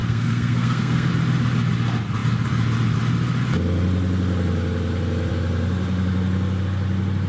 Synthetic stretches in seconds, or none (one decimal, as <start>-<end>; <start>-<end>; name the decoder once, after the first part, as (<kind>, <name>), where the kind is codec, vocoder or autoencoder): 0.0-1.1 (codec, SNAC)